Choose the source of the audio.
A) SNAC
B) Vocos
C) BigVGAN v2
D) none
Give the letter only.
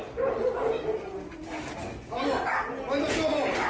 D